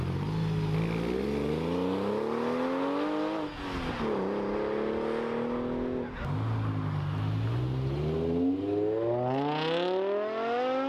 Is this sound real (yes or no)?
yes